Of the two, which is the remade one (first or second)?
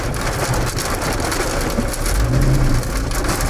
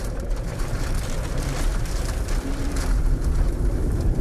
second